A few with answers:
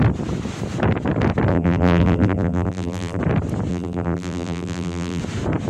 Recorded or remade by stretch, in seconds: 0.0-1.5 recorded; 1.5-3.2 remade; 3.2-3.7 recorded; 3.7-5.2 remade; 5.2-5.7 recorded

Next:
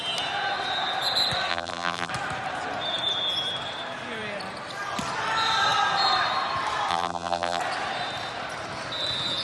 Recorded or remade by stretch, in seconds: 0.0-1.5 recorded; 1.5-2.1 remade; 2.1-6.9 recorded; 6.9-7.6 remade; 7.6-9.4 recorded

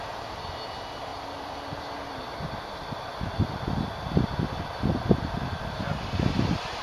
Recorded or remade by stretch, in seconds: 0.0-1.1 recorded; 1.1-5.2 remade; 5.2-6.8 recorded

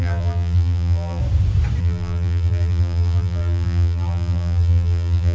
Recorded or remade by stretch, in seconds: 0.0-1.2 remade; 1.2-1.8 recorded; 1.8-5.3 remade

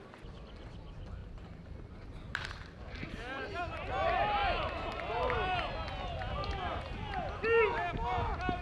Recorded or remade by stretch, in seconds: 0.0-1.2 recorded; 1.2-1.9 remade; 1.9-2.3 recorded; 2.3-3.6 remade; 3.6-8.6 recorded

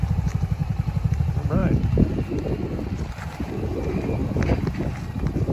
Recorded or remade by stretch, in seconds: 0.0-5.5 recorded